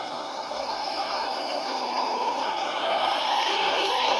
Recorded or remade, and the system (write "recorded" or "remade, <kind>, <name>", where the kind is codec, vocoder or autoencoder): remade, codec, SNAC